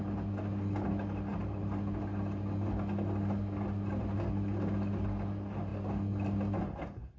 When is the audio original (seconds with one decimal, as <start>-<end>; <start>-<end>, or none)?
0.0-7.2